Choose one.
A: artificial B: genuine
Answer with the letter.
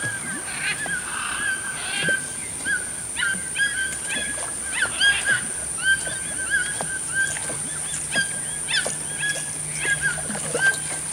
B